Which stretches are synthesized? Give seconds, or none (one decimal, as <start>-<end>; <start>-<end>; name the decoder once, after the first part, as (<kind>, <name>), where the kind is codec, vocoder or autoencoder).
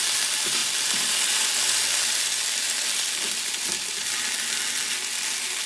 none